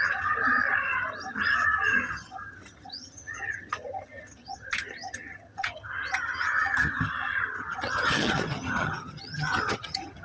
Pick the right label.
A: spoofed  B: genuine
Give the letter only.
A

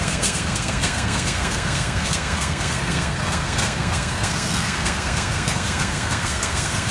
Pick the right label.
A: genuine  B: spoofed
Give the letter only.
B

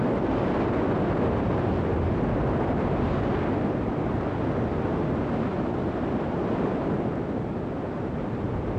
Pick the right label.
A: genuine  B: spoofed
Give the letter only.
A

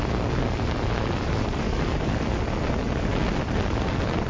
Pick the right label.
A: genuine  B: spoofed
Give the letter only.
A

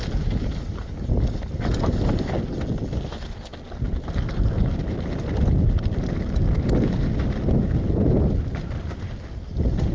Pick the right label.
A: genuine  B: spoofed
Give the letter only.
A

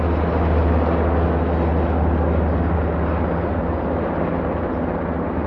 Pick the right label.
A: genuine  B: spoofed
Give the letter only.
A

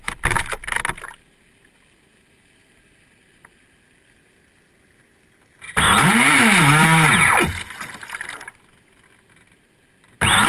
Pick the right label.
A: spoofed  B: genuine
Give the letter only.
B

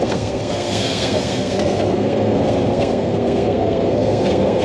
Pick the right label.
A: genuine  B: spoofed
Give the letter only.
B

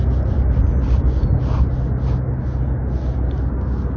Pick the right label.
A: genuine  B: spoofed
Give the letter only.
A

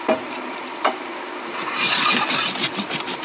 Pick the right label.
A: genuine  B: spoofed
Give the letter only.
A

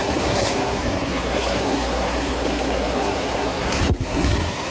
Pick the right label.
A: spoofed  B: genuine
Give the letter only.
A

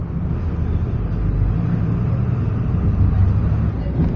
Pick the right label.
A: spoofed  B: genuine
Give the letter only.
B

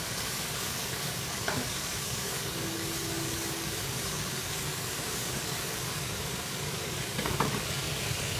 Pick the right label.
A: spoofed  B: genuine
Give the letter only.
A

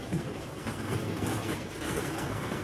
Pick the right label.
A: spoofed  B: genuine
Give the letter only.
A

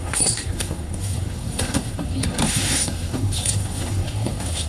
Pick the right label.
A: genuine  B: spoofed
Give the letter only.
B